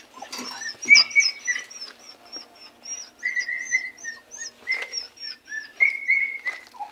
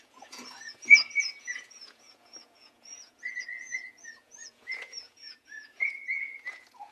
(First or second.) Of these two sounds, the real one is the first